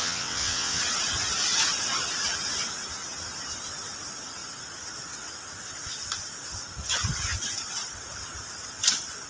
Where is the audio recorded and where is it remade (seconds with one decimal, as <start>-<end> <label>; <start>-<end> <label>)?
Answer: 0.0-0.8 remade; 0.8-9.3 recorded